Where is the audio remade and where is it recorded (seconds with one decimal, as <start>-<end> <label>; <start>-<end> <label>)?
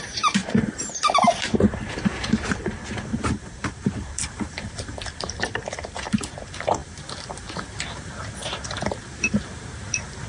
0.0-10.3 remade